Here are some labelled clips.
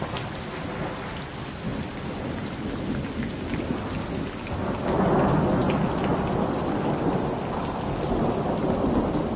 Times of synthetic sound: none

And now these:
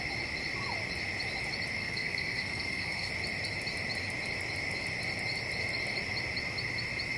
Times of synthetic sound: 1.8-3.1 (codec, SNAC)

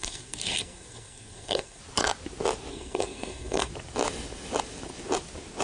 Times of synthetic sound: 0.0-1.8 (codec, SNAC); 2.7-3.7

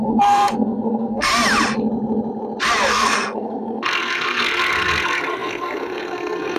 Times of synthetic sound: 0.0-1.3 (codec, SNAC); 2.9-6.6

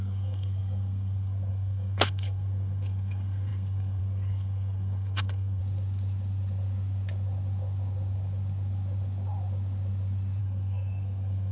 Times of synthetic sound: 0.0-5.6 (codec, SNAC); 10.4-11.5

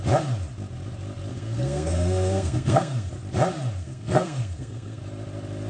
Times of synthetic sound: 1.3-3.1 (codec, SNAC); 3.8-5.0

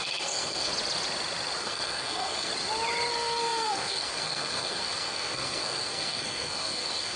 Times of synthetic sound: 0.0-0.7 (codec, SNAC); 1.6-2.5; 3.1-7.2

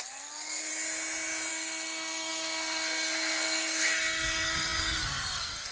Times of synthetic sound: 0.0-0.7 (codec, SNAC); 1.5-5.7